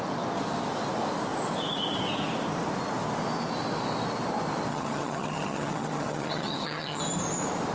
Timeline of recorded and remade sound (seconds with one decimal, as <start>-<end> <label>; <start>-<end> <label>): 0.0-4.7 recorded; 4.7-7.0 remade; 7.0-7.7 recorded